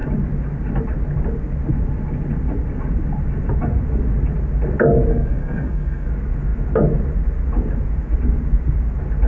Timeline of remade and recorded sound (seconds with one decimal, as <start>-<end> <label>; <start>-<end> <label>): 0.0-5.1 recorded; 5.1-6.1 remade; 6.1-9.3 recorded